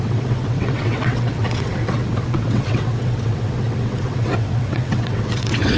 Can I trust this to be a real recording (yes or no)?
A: no